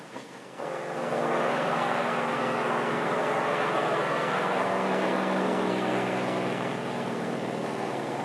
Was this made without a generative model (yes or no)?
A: no